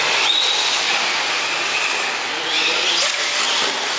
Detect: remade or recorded recorded